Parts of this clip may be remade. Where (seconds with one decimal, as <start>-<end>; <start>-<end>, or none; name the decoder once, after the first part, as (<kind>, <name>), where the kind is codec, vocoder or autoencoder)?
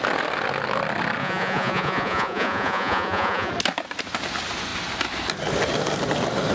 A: 1.2-3.5 (vocoder, Vocos)